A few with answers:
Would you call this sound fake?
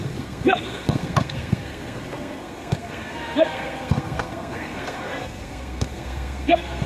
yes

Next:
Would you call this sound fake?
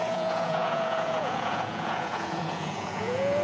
yes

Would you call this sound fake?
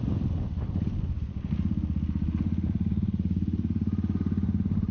no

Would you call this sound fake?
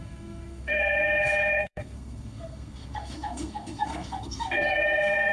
yes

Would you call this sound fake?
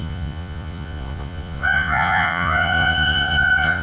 yes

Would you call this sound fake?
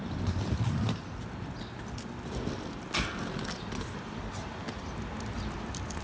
no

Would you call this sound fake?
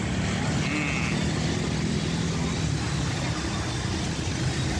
no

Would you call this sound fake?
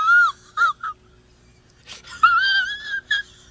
no